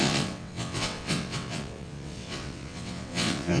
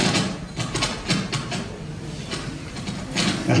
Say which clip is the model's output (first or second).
first